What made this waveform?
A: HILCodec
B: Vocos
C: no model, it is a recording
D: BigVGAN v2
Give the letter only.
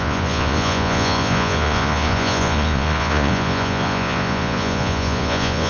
B